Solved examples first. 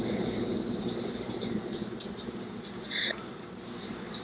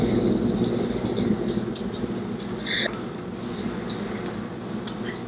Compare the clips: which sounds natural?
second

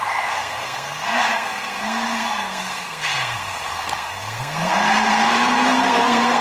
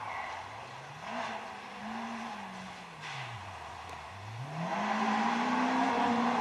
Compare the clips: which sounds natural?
second